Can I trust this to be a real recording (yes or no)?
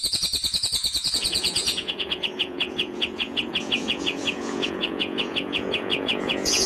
no